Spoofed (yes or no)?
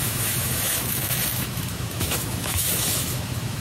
yes